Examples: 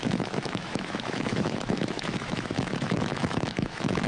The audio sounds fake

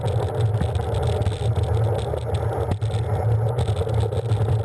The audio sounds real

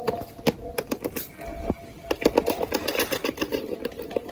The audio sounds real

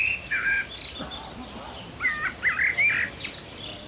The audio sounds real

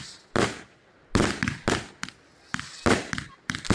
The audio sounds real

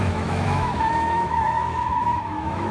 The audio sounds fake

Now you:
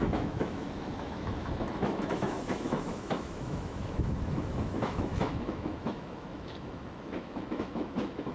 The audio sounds fake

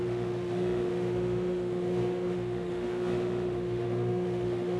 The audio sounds fake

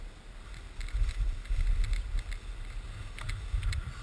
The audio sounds real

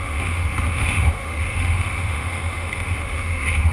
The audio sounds fake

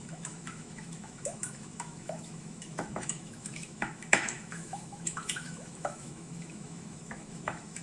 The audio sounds fake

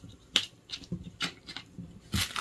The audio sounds real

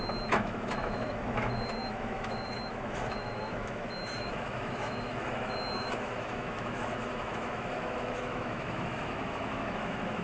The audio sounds fake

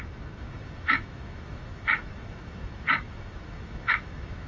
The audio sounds fake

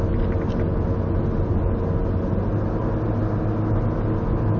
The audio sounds real